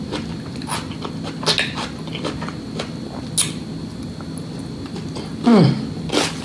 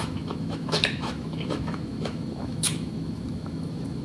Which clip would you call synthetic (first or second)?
second